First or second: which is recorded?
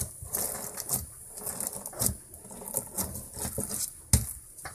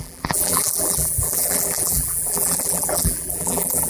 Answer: first